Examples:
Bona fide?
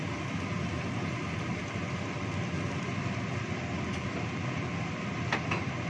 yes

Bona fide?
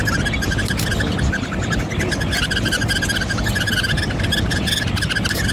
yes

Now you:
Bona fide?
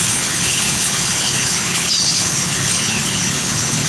no